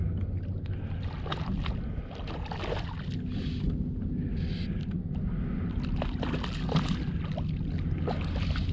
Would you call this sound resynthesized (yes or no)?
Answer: no